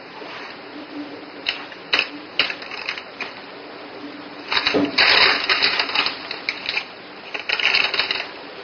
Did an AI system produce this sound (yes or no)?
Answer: yes